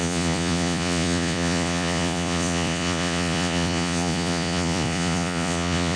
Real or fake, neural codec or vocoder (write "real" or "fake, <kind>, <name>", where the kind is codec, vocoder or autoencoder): fake, vocoder, Vocos